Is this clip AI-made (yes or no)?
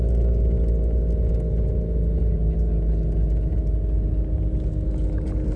no